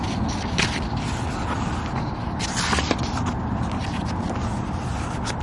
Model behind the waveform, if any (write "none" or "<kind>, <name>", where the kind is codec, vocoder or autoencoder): none